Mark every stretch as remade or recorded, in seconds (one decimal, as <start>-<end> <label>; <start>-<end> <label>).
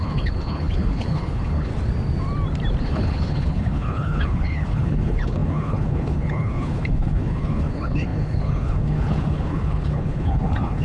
0.0-1.7 remade; 1.7-2.8 recorded; 2.8-10.8 remade